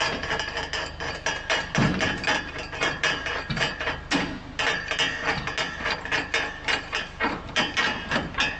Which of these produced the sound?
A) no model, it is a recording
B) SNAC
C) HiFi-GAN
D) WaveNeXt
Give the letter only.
A